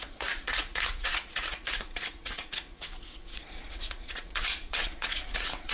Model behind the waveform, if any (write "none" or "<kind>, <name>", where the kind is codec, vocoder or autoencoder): vocoder, Vocos